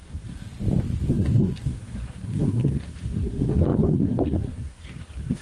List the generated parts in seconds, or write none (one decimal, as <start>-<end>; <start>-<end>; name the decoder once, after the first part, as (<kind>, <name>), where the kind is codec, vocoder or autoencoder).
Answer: 0.0-0.5 (codec, SNAC); 1.1-5.4